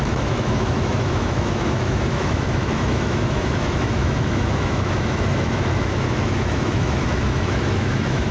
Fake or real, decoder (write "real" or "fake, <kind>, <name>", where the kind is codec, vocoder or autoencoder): fake, autoencoder, DAC-VAE